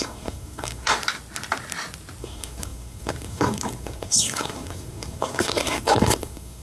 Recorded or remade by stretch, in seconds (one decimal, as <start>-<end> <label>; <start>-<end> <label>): 0.0-1.0 remade; 1.0-2.2 recorded; 2.2-6.6 remade